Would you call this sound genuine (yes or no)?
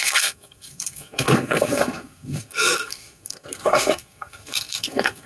no